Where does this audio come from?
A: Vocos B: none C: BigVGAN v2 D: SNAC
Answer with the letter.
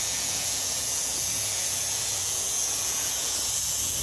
A